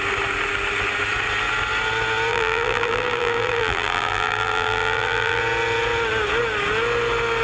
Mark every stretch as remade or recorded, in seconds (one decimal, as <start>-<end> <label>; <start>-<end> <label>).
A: 0.0-2.3 recorded; 2.3-5.4 remade; 5.4-7.4 recorded